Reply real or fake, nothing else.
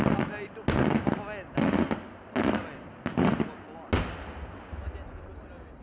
real